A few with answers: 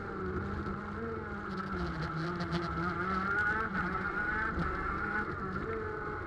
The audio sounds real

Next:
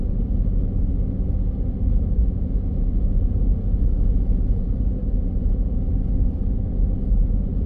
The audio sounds real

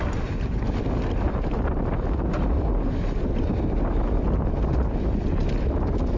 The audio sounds real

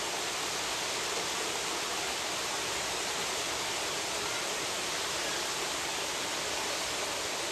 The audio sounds real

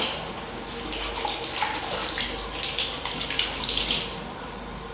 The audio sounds real